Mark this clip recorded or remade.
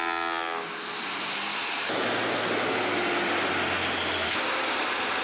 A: recorded